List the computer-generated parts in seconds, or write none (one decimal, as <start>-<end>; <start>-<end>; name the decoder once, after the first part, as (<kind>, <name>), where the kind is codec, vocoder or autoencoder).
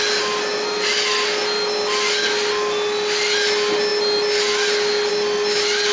none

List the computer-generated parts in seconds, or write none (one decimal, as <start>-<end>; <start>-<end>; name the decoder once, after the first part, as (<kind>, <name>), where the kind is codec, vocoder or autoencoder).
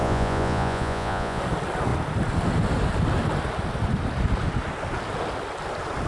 0.0-1.4 (vocoder, Vocos)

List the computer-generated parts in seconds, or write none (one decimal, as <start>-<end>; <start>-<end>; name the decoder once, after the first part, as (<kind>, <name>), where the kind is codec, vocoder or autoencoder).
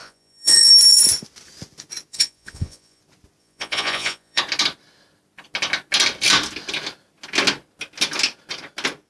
0.0-0.7 (vocoder, Vocos); 2.1-3.0; 3.4-4.4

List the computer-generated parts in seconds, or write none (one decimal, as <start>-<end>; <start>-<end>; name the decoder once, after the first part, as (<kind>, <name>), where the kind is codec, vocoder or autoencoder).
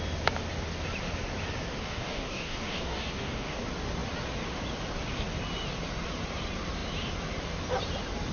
1.8-3.6 (codec, DAC)